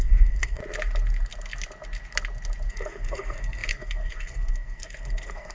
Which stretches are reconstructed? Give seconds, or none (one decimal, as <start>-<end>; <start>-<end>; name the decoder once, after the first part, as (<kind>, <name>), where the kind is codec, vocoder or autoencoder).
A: 0.0-0.6 (codec, SNAC); 2.7-5.5